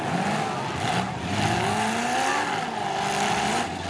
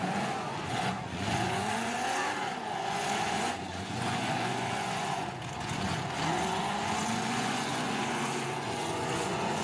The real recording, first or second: first